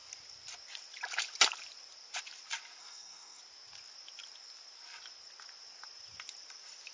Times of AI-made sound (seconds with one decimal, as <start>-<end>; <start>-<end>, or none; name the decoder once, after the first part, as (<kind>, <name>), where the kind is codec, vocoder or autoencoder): 2.8-3.4 (codec, SNAC)